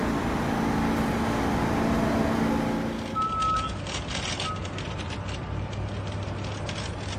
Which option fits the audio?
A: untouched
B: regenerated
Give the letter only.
A